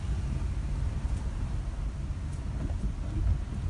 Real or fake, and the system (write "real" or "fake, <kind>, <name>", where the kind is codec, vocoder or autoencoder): real